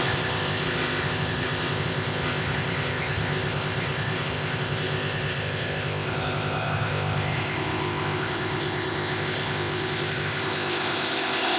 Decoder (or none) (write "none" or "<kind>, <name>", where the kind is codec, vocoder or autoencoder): codec, ZipCodec